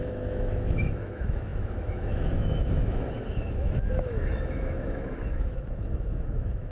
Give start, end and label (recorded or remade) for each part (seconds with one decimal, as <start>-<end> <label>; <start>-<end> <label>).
0.0-6.7 remade